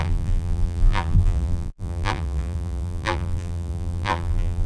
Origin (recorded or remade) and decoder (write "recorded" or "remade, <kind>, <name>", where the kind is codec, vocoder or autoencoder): remade, vocoder, BigVGAN v2